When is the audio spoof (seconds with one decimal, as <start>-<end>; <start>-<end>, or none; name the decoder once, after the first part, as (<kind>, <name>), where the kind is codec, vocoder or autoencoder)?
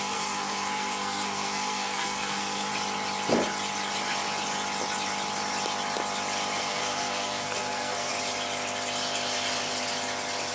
0.0-2.7 (codec, SNAC); 6.6-8.1